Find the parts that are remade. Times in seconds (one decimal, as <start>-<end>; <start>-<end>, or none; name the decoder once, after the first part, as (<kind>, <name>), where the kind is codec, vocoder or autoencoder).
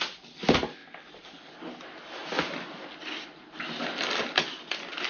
none